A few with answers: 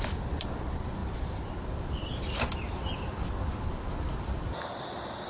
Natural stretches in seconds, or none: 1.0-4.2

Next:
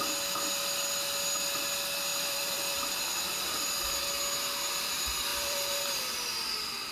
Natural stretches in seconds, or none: 0.0-2.1; 4.0-5.3; 6.0-6.9